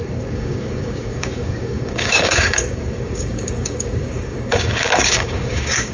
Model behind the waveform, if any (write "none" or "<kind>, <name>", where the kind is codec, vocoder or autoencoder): codec, DAC